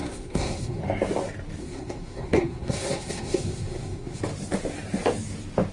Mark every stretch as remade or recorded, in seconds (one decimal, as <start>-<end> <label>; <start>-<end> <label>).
0.0-0.8 remade; 0.8-1.6 recorded; 1.6-4.2 remade; 4.2-5.7 recorded